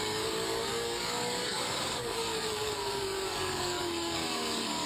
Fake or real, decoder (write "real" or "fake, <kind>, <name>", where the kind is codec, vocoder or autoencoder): fake, codec, DAC